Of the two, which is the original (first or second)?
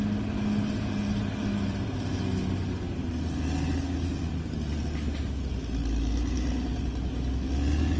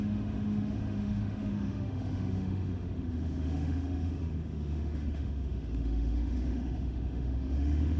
first